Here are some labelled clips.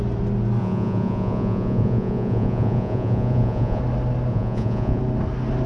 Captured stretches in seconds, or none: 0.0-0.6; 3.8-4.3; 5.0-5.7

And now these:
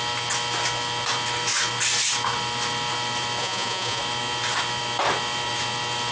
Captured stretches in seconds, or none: 0.0-3.4; 4.0-6.1

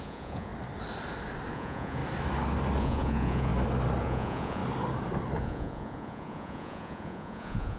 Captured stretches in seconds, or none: 0.5-1.5; 2.0-2.8; 3.5-4.0; 4.6-5.4

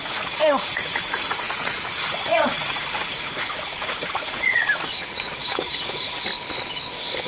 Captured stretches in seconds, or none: 6.3-7.3

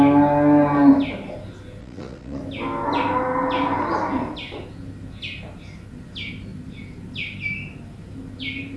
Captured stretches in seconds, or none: 0.0-1.8; 2.4-8.8

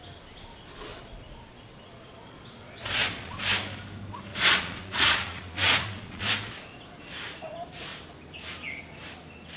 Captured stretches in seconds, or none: 0.0-0.9; 3.4-4.3; 6.3-9.6